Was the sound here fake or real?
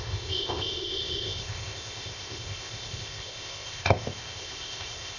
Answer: fake